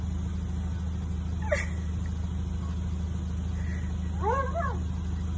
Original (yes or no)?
yes